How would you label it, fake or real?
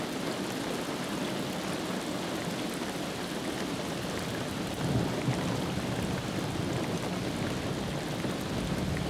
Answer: real